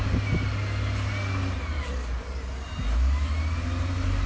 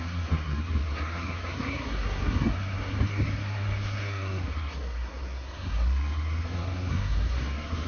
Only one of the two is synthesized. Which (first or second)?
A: second